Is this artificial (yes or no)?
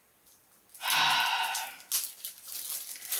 no